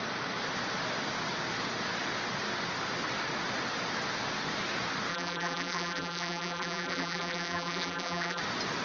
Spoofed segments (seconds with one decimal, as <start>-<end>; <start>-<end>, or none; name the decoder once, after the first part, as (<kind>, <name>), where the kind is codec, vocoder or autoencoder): 5.1-8.4 (vocoder, BigVGAN v2)